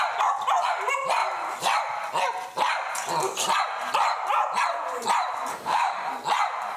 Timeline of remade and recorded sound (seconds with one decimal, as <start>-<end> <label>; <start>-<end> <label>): 0.0-5.5 recorded; 5.5-6.1 remade; 6.1-6.8 recorded